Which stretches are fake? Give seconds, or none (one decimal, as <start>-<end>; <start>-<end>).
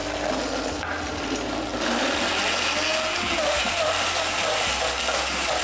none